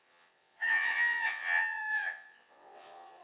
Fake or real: fake